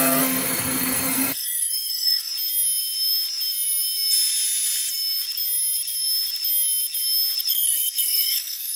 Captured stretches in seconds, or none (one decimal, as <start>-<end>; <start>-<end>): 2.3-7.5

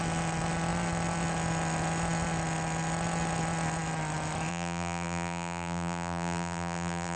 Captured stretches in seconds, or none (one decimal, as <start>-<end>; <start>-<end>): 0.0-4.5

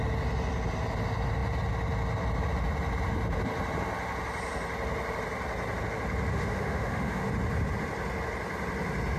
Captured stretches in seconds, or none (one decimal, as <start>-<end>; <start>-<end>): 0.0-6.3; 7.3-9.2

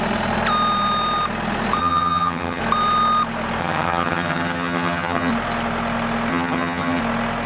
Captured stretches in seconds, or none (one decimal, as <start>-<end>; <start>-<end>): 0.0-1.8; 2.6-3.6; 5.3-6.3; 7.0-7.5